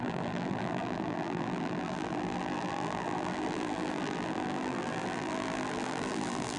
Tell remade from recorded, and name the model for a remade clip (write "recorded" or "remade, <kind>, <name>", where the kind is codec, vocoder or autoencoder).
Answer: remade, vocoder, BigVGAN v2